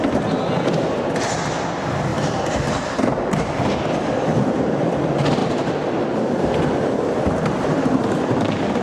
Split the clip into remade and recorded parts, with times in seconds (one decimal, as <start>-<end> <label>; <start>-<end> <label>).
0.0-2.1 recorded; 2.1-3.8 remade; 3.8-4.3 recorded; 4.3-5.0 remade; 5.0-8.8 recorded